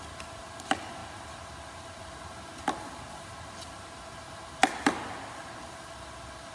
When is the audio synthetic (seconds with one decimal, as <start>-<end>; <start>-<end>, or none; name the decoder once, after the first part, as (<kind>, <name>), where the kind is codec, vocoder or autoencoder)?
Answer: none